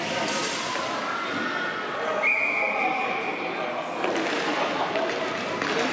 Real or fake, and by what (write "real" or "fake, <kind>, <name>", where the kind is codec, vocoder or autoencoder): real